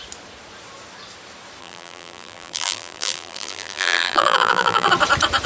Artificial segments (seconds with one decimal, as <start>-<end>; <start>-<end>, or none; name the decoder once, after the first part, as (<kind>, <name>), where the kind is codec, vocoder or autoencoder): 1.6-4.9 (vocoder, BigVGAN v2)